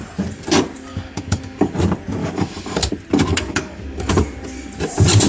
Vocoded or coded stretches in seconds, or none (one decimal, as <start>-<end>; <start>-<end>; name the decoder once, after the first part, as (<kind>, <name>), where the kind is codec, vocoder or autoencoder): 0.9-1.7 (codec, DAC); 2.2-2.9; 3.3-4.1